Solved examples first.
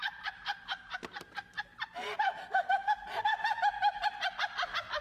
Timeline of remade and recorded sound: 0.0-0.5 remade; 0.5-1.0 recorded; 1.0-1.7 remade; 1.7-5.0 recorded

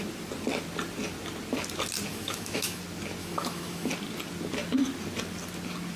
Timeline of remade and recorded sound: 0.0-2.1 recorded; 2.1-2.8 remade; 2.8-3.2 recorded; 3.2-3.9 remade; 3.9-6.0 recorded

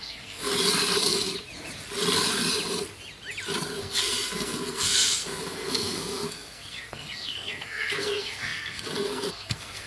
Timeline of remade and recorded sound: 0.0-0.5 remade; 0.5-3.8 recorded; 3.8-9.9 remade

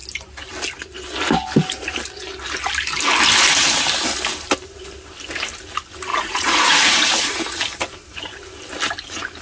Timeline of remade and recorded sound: 0.0-6.1 recorded; 6.1-7.6 remade; 7.6-9.4 recorded